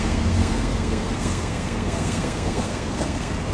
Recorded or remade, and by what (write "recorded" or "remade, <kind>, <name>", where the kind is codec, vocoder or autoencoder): remade, codec, SNAC